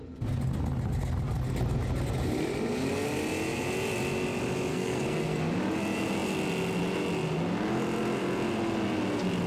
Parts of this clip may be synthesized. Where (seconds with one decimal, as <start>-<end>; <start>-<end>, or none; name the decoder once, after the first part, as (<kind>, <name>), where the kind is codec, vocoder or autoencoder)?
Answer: 4.7-5.4 (codec, SNAC)